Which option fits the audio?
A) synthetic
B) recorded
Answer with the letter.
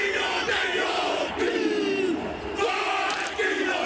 A